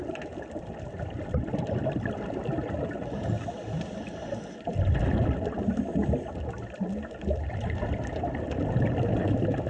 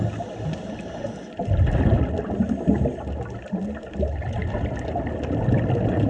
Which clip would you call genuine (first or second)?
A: second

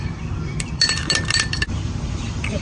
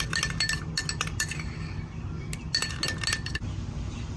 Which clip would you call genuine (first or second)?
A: second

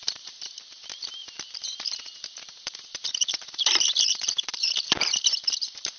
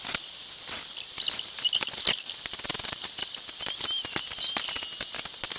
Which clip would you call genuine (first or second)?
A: second